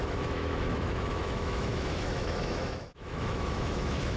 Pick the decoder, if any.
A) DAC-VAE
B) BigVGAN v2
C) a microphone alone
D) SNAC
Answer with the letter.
A